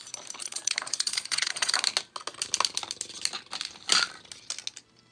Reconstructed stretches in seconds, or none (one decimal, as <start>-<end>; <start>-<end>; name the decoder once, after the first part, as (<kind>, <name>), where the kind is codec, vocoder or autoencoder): 0.4-1.7 (vocoder, Vocos)